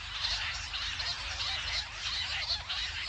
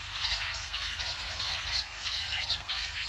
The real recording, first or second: first